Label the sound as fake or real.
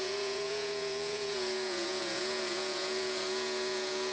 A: fake